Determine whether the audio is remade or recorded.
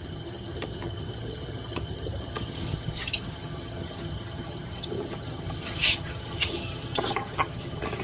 remade